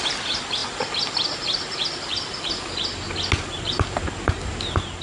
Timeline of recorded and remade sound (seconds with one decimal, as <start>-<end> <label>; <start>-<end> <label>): 0.0-5.0 recorded